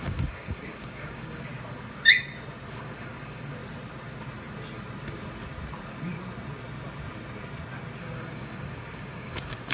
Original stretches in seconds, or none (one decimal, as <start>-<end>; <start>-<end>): 1.5-2.7; 3.6-8.0